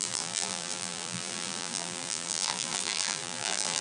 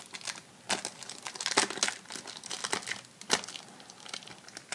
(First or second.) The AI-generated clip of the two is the first